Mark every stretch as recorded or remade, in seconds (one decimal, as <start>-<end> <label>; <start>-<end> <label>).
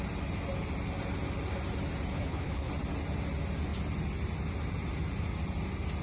0.0-2.1 recorded; 2.1-2.7 remade; 2.7-6.0 recorded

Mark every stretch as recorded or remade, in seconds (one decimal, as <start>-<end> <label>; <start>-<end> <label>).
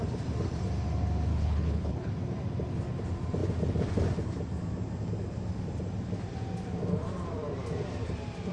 0.0-1.3 recorded; 1.3-2.1 remade; 2.1-8.5 recorded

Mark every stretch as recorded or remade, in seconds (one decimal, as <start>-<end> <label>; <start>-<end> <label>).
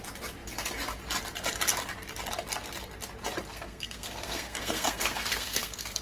0.0-3.5 recorded; 3.5-6.0 remade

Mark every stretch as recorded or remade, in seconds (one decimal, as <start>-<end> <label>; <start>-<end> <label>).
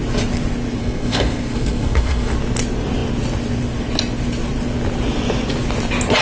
0.0-0.8 recorded; 0.8-2.3 remade; 2.3-6.2 recorded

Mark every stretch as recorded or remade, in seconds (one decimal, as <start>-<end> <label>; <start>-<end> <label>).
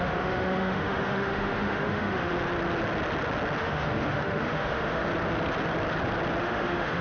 0.0-2.3 remade; 2.3-3.6 recorded; 3.6-5.1 remade; 5.1-6.4 recorded; 6.4-7.0 remade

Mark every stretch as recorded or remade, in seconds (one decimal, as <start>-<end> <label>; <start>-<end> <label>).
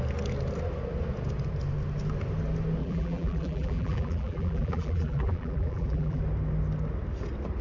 0.0-2.8 recorded; 2.8-6.2 remade; 6.2-7.6 recorded